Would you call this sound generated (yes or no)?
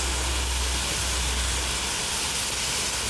no